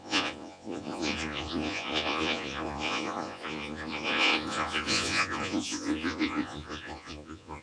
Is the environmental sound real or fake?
fake